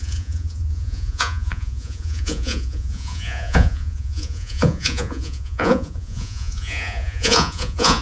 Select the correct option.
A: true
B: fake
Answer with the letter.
B